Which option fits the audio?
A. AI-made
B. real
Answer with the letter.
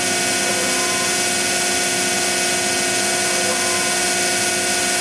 B